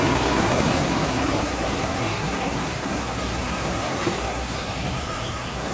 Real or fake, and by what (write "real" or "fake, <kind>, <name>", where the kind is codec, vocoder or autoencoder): fake, codec, SNAC